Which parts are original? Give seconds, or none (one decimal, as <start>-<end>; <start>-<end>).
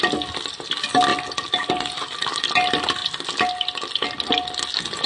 0.0-5.1